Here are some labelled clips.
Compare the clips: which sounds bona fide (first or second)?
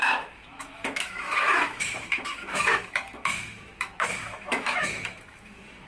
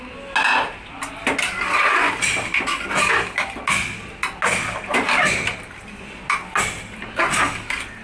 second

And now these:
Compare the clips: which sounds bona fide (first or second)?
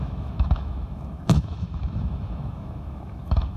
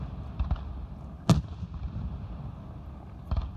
second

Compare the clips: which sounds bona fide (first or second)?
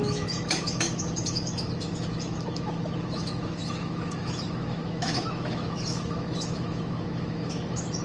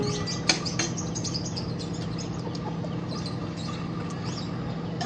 second